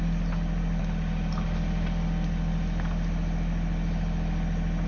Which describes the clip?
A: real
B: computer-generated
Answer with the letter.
A